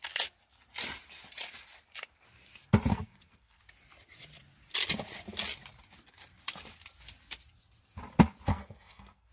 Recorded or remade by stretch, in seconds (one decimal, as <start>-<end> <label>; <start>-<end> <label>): 0.0-2.9 recorded; 2.9-3.6 remade; 3.6-8.5 recorded; 8.5-9.3 remade